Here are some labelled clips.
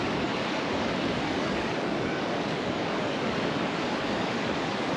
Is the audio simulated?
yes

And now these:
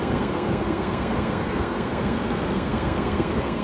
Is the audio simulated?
yes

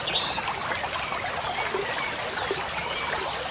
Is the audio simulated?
no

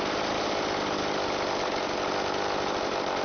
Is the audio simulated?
no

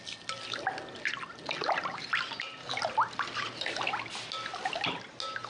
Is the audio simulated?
no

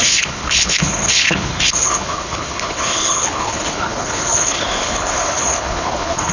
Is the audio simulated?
yes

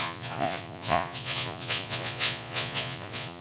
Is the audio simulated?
yes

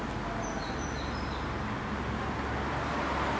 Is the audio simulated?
no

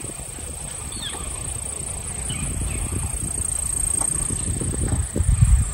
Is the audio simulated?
no